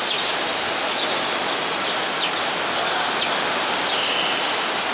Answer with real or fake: real